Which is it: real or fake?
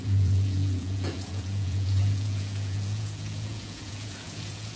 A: fake